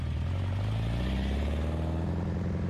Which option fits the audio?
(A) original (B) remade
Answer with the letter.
A